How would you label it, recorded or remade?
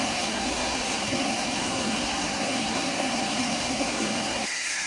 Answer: remade